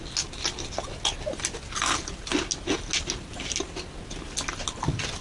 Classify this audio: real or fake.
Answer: real